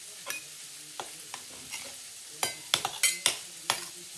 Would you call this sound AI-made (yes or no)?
no